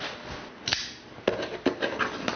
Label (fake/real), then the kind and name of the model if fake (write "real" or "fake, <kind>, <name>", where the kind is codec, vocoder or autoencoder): real